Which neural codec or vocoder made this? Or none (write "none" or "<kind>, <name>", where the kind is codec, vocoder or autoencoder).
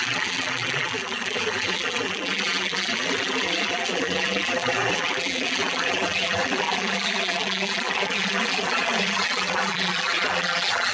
vocoder, BigVGAN v2